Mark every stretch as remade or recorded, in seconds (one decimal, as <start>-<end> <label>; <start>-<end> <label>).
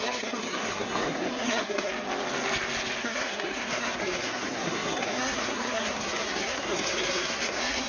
0.0-1.9 remade; 1.9-3.0 recorded; 3.0-7.9 remade